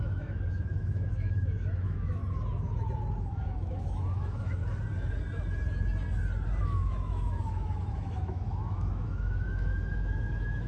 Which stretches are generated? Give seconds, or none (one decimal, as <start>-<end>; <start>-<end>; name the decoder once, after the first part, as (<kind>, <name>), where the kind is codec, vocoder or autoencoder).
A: 0.0-2.2 (autoencoder, DAC-VAE); 3.2-4.6; 6.6-10.7